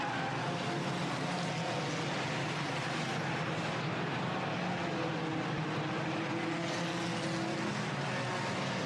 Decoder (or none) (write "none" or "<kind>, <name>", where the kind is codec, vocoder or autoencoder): none